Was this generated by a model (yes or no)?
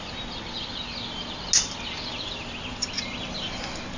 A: no